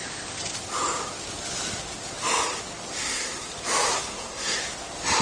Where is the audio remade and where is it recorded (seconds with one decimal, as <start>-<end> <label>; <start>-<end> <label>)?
0.0-3.0 recorded; 3.0-3.5 remade; 3.5-3.9 recorded; 3.9-4.6 remade; 4.6-5.2 recorded